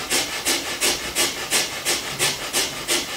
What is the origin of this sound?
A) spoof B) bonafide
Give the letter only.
B